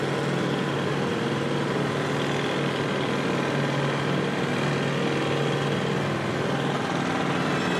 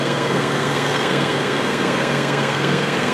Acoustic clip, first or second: first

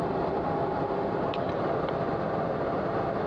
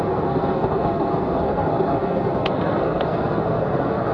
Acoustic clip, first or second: first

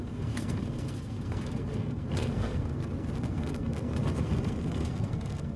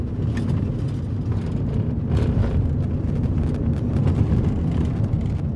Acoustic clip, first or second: second